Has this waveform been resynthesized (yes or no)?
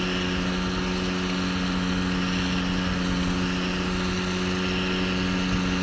no